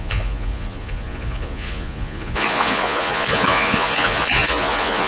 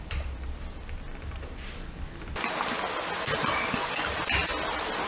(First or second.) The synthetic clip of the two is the first